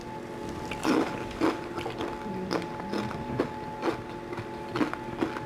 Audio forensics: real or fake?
real